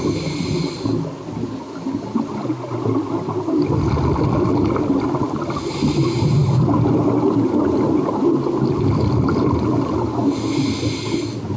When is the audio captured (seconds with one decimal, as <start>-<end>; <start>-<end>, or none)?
0.0-11.6